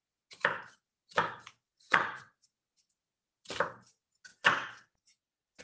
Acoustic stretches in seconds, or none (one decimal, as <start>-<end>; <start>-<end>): 0.0-1.7; 3.4-4.3